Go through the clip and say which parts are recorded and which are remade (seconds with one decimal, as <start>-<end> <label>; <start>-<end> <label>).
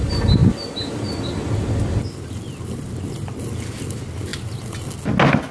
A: 0.0-5.5 recorded